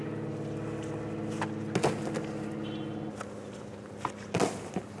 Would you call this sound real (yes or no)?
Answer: yes